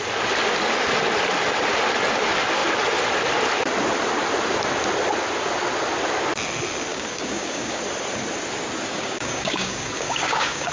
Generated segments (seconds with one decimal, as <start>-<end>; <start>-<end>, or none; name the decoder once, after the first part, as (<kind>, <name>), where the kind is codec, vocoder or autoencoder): 6.9-7.8 (codec, DAC); 8.9-10.7